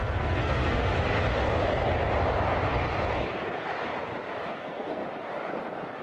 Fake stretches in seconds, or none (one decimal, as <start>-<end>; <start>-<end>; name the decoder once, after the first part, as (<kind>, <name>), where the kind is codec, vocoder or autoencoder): 0.0-0.9 (codec, SNAC); 4.5-5.0